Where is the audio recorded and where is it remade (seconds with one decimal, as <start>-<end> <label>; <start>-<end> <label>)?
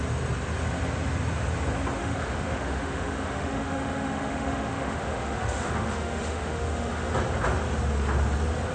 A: 0.0-2.0 recorded; 2.0-7.1 remade; 7.1-8.7 recorded